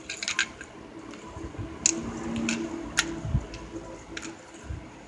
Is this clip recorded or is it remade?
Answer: recorded